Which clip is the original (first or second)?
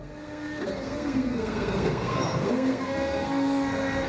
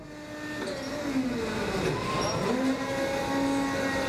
second